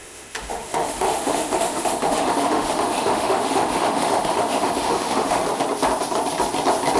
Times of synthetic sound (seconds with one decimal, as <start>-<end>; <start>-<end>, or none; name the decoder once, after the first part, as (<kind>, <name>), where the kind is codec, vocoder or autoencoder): 0.0-5.4 (autoencoder, DAC-VAE)

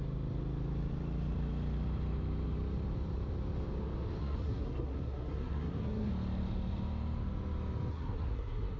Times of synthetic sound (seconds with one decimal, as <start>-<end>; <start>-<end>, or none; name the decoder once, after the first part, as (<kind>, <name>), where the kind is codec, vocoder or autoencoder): 4.2-6.1 (codec, SNAC); 7.9-8.8

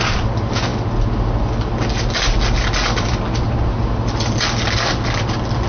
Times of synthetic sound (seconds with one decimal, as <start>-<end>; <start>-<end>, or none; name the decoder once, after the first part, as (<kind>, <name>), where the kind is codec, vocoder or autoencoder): none

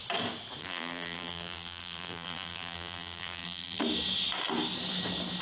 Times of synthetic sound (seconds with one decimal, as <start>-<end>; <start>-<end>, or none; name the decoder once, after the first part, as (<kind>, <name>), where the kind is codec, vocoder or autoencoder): 0.6-3.8 (vocoder, BigVGAN v2)

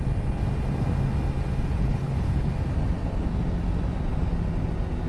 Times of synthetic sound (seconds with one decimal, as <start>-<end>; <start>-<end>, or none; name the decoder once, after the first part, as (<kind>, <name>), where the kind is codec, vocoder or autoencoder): 1.7-2.5 (codec, HILCodec)

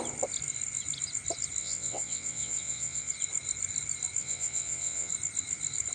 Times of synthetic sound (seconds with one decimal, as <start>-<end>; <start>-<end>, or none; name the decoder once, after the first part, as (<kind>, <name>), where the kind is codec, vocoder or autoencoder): 1.6-3.1 (vocoder, WaveNeXt); 4.2-5.1

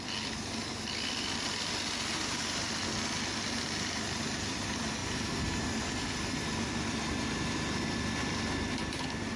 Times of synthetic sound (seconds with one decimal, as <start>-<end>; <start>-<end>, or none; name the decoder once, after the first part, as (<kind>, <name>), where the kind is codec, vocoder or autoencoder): none

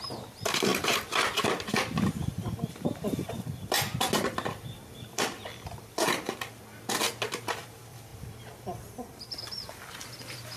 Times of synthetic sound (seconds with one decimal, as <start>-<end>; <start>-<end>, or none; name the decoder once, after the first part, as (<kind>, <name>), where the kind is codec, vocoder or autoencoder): 0.0-0.7 (vocoder, BigVGAN v2); 2.5-6.5; 7.1-10.6